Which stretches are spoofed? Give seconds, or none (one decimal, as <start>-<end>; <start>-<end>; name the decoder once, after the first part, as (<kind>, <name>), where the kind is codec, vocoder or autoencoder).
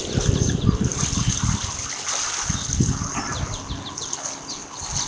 none